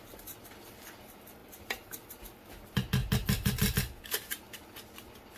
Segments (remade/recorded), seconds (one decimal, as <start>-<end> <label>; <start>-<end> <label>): 0.0-5.4 recorded